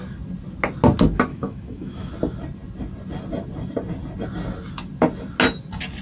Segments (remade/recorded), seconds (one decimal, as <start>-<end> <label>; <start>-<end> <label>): 0.0-1.3 recorded; 1.3-2.1 remade; 2.1-6.0 recorded